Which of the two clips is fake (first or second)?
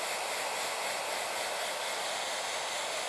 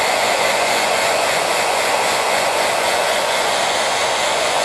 second